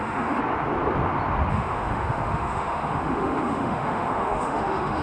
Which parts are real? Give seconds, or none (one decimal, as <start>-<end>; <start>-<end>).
0.4-1.5